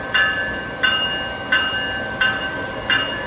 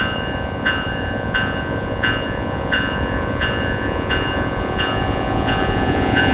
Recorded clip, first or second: first